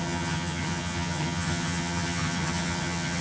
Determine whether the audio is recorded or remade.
remade